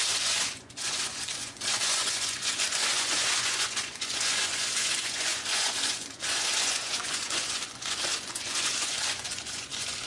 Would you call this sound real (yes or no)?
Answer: no